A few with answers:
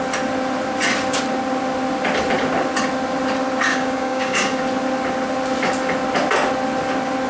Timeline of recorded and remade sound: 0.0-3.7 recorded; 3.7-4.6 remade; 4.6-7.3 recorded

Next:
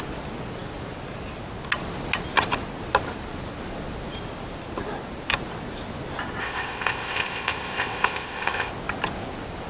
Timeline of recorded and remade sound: 0.0-6.4 recorded; 6.4-8.7 remade; 8.7-9.7 recorded

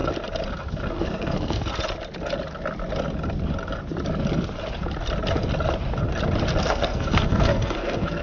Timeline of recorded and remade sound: 0.0-1.0 recorded; 1.0-1.7 remade; 1.7-6.6 recorded; 6.6-8.2 remade

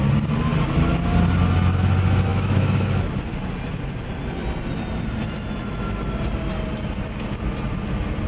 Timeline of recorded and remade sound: 0.0-2.3 recorded; 2.3-3.0 remade; 3.0-8.3 recorded